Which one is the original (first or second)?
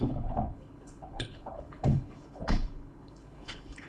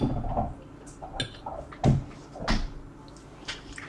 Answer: second